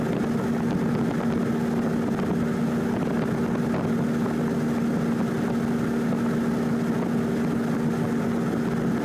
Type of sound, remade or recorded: recorded